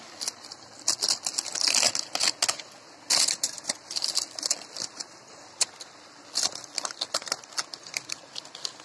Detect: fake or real real